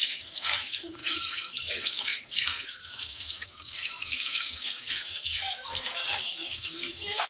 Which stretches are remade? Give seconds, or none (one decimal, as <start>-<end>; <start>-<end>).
0.0-7.3